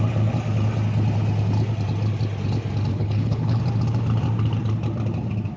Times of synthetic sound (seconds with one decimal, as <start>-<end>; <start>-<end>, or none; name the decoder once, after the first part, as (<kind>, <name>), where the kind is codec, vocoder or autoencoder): 2.9-3.6 (codec, HILCodec)